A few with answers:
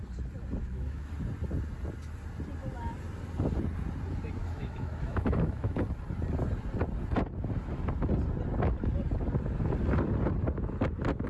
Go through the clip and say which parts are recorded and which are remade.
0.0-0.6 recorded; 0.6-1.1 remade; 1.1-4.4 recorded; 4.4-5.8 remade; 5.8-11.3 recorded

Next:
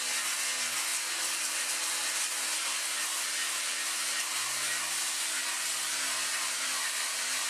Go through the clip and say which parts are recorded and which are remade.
0.0-7.5 recorded

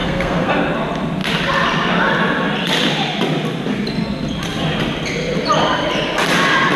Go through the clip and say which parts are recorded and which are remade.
0.0-0.5 remade; 0.5-6.8 recorded

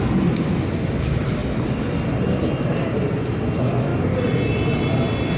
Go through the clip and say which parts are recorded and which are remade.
0.0-1.4 recorded; 1.4-3.4 remade; 3.4-3.9 recorded; 3.9-5.4 remade

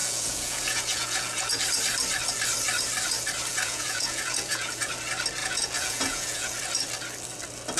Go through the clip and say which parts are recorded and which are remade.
0.0-1.6 remade; 1.6-3.5 recorded; 3.5-4.9 remade; 4.9-5.4 recorded; 5.4-6.6 remade; 6.6-7.8 recorded

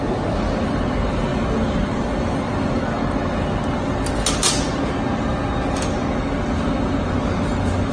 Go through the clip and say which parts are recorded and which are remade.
0.0-1.3 recorded; 1.3-2.8 remade; 2.8-7.9 recorded

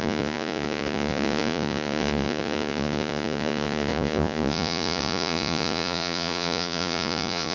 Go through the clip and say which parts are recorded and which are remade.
0.0-7.5 remade